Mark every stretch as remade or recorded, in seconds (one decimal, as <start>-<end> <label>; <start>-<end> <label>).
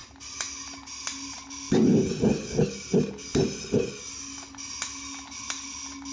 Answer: 0.0-6.1 recorded